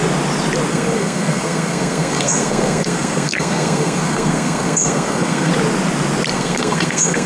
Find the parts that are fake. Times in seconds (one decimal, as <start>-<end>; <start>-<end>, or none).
0.7-5.5; 6.3-7.3